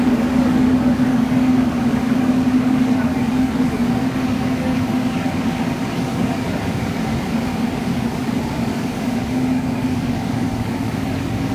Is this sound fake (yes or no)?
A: yes